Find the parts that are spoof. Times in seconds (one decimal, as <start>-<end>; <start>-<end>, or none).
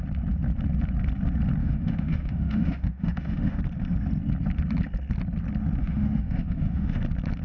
1.6-3.6; 5.8-7.0